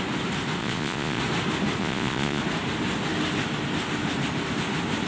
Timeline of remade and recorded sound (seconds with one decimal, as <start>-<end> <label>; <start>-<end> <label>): 0.0-0.6 recorded; 0.6-1.2 remade; 1.2-1.8 recorded; 1.8-2.4 remade; 2.4-5.1 recorded